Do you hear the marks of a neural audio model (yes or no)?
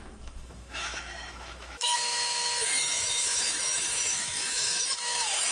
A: yes